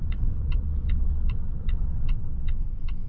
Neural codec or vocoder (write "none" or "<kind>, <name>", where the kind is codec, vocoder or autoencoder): vocoder, WaveNeXt